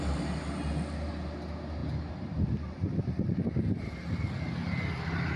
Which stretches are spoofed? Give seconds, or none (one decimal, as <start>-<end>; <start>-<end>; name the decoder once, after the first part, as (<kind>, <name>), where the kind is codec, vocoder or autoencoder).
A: none